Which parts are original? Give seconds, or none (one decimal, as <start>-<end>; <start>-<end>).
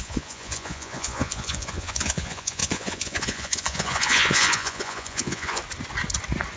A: 5.6-6.6